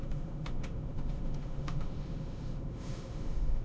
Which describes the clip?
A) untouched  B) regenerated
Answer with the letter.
B